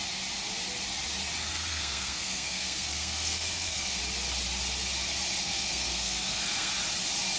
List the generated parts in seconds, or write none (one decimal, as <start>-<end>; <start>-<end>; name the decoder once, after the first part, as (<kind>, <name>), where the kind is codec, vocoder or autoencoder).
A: 1.4-4.0 (codec, SNAC); 5.4-6.7